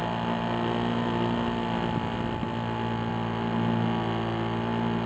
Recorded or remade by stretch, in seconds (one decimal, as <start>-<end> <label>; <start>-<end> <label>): 0.0-5.1 recorded